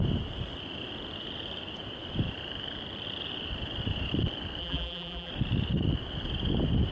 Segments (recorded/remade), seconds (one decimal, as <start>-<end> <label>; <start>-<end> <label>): 0.0-4.6 recorded; 4.6-5.3 remade; 5.3-6.9 recorded